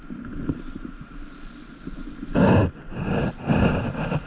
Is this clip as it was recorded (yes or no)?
yes